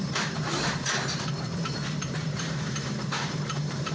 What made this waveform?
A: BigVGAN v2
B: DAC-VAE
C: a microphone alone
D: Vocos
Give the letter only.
A